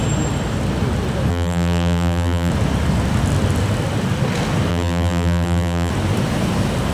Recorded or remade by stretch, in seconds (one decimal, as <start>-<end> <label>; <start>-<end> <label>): 0.0-1.3 recorded; 1.3-2.5 remade; 2.5-4.7 recorded; 4.7-5.9 remade; 5.9-6.9 recorded